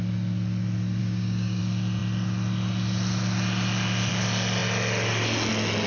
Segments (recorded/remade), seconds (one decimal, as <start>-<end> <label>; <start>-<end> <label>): 0.0-1.0 recorded; 1.0-1.6 remade; 1.6-5.9 recorded